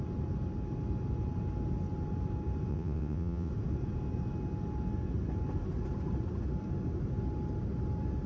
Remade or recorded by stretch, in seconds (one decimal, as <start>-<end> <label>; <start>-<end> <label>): 0.0-2.7 recorded; 2.7-3.5 remade; 3.5-8.3 recorded